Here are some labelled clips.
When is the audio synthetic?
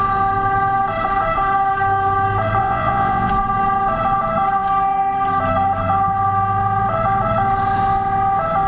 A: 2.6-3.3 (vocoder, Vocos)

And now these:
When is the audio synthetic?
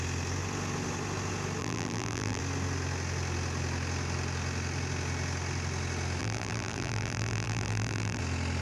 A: 1.6-2.4 (vocoder, BigVGAN v2); 6.2-8.2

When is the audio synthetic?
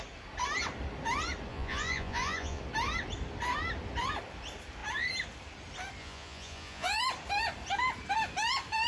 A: 1.5-2.6 (vocoder, Vocos); 6.0-7.0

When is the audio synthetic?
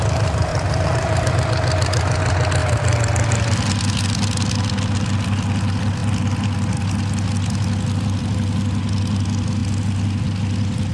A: 0.5-1.3 (vocoder, BigVGAN v2); 9.6-10.9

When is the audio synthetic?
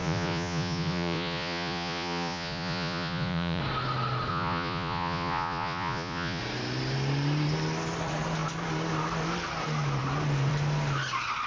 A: 0.0-3.6 (vocoder, Vocos); 4.3-6.4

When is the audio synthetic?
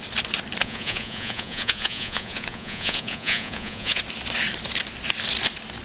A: 0.6-4.0 (vocoder, Vocos)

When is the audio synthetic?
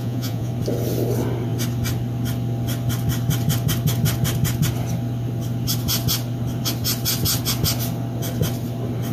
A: 0.0-0.5 (vocoder, Vocos)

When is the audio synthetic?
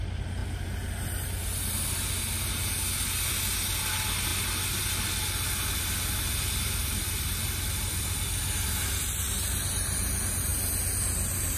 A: none